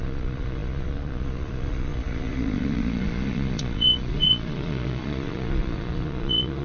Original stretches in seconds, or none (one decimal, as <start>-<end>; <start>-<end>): none